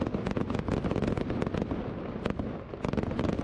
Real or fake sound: real